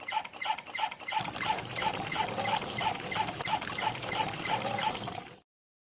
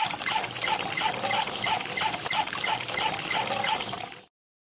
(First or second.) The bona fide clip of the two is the second